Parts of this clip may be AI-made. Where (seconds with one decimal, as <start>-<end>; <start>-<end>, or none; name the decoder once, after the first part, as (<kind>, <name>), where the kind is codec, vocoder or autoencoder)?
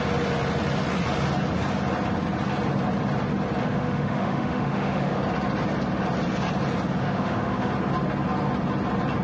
3.6-5.2 (autoencoder, DAC-VAE); 7.0-7.7